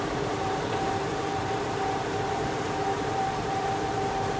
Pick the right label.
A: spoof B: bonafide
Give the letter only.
A